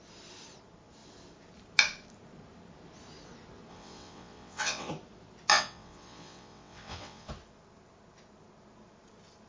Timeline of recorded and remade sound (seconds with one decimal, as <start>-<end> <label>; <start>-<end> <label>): 0.0-3.7 recorded; 3.7-4.9 remade; 4.9-5.5 recorded; 5.5-7.3 remade; 7.3-9.5 recorded